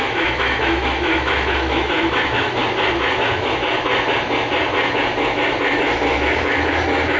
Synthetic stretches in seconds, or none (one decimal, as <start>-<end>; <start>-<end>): 0.0-2.6; 3.1-3.9; 5.7-7.2